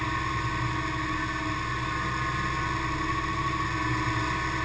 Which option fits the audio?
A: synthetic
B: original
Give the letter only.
B